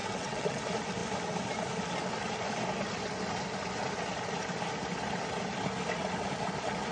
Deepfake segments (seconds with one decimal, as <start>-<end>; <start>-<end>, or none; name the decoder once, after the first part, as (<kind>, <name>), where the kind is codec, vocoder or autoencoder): 0.0-0.6 (vocoder, WaveNeXt)